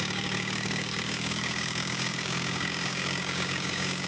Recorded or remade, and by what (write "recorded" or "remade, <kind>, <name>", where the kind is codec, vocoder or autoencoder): remade, codec, DAC